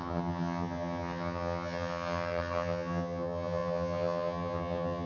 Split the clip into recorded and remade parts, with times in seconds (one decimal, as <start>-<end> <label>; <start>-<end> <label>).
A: 0.0-5.1 remade